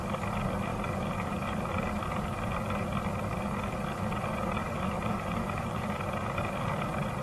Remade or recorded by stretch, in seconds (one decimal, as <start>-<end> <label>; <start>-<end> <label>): 0.0-0.7 recorded; 0.7-2.0 remade; 2.0-4.6 recorded; 4.6-6.4 remade; 6.4-7.2 recorded